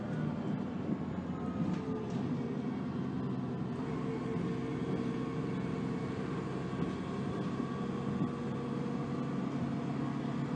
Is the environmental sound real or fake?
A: real